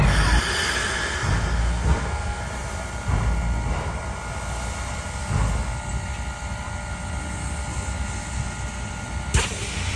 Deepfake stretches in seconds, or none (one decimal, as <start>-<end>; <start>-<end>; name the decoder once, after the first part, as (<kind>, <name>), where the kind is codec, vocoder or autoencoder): 1.6-2.4 (codec, SNAC)